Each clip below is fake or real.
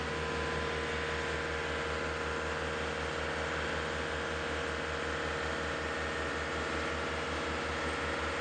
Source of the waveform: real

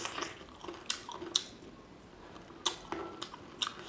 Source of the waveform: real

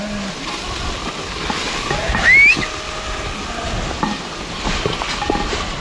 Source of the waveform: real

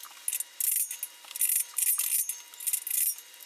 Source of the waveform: real